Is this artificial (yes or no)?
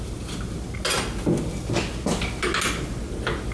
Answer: no